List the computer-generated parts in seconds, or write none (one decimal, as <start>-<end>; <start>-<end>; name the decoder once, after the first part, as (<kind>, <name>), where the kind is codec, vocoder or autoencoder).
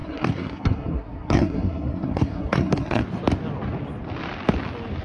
0.0-3.0 (codec, SNAC)